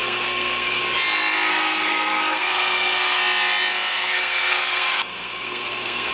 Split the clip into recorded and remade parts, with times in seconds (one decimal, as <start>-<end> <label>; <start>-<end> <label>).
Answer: 0.0-0.8 remade; 0.8-1.5 recorded; 1.5-3.2 remade; 3.2-3.9 recorded; 3.9-6.1 remade

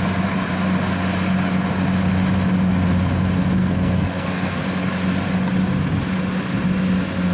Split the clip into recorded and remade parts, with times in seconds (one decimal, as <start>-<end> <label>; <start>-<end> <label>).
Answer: 0.0-3.6 recorded; 3.6-4.6 remade; 4.6-7.3 recorded

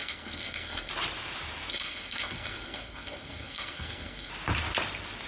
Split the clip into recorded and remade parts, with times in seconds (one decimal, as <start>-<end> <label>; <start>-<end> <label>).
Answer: 0.0-0.9 remade; 0.9-1.7 recorded; 1.7-4.3 remade; 4.3-5.3 recorded